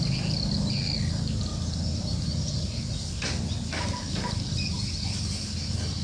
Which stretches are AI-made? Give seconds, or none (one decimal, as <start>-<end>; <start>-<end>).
none